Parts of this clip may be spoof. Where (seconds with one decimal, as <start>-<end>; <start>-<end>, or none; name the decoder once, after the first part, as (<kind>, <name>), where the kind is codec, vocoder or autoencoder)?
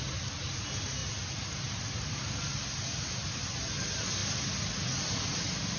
1.0-2.4 (vocoder, BigVGAN v2)